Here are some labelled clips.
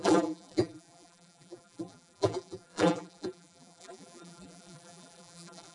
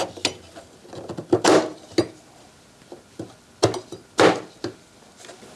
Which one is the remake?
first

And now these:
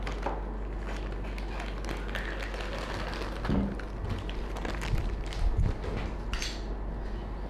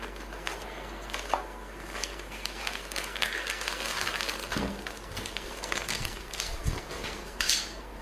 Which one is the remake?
second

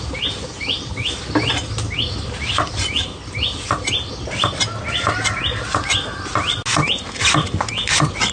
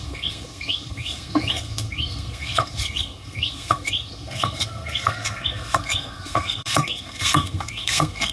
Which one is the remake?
second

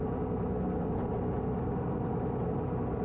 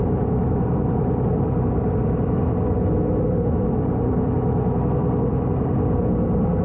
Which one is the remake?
second